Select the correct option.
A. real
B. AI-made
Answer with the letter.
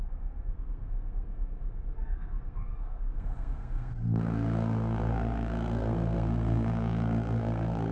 B